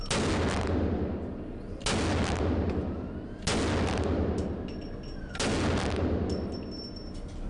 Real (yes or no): yes